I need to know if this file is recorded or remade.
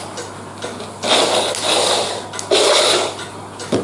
recorded